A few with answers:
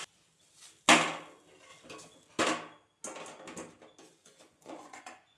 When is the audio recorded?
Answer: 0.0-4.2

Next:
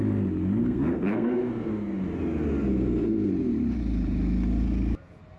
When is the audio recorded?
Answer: 0.0-0.6; 1.7-2.7; 3.3-5.4